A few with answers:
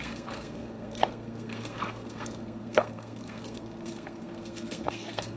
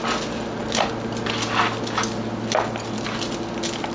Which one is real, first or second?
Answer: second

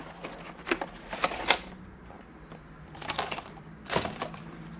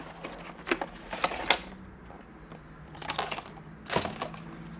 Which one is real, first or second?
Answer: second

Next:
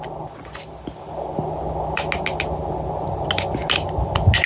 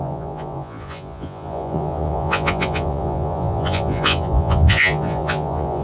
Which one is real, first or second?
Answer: first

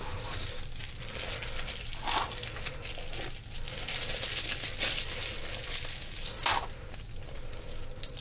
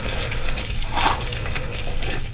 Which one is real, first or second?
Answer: first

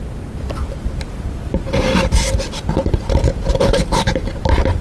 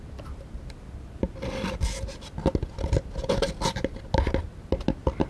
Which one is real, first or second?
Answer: second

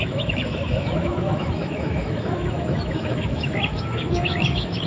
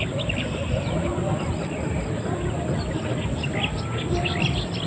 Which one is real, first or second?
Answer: second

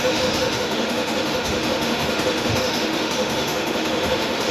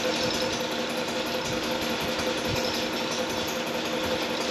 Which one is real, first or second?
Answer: second